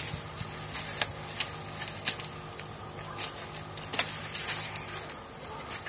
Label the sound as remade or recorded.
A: recorded